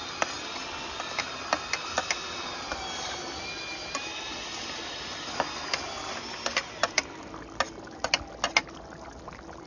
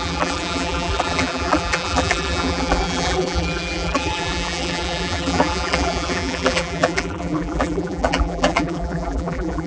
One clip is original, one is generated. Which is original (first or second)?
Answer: first